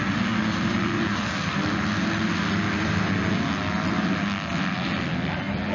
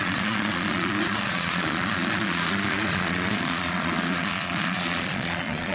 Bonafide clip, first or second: first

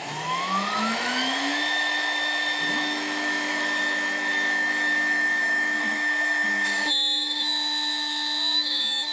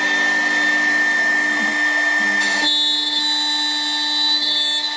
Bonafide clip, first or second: second